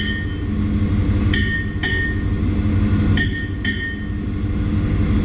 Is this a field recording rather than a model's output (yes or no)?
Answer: yes